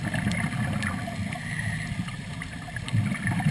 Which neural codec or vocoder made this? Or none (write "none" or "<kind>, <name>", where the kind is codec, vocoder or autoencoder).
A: none